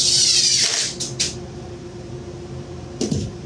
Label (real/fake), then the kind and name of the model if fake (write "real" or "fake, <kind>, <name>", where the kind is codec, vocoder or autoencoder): real